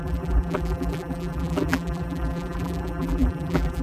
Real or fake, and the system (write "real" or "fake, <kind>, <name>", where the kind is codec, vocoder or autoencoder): fake, vocoder, BigVGAN v2